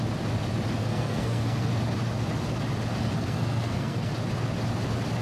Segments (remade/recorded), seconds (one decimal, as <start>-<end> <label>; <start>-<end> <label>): 0.0-0.8 recorded; 0.8-1.7 remade; 1.7-3.0 recorded; 3.0-4.1 remade; 4.1-5.2 recorded